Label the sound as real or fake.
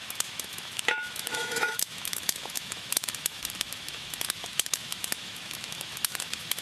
fake